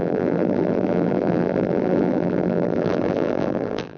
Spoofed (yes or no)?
yes